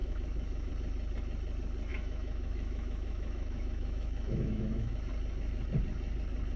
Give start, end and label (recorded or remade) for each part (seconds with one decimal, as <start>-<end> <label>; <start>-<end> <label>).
0.0-0.7 remade; 0.7-1.9 recorded; 1.9-5.1 remade; 5.1-6.6 recorded